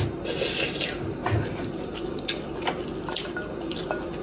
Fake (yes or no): no